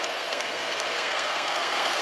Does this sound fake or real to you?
fake